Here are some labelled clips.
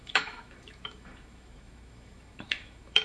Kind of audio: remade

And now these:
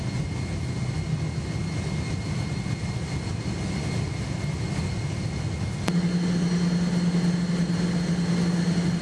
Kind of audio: recorded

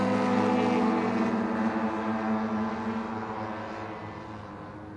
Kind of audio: recorded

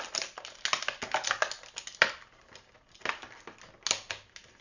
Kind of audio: recorded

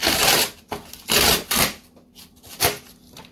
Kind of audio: recorded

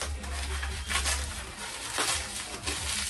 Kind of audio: recorded